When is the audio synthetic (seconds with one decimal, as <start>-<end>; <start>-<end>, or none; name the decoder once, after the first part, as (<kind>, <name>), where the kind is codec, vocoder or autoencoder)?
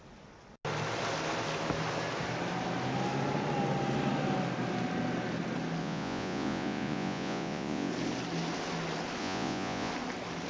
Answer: 5.8-7.9 (vocoder, Vocos); 9.2-9.9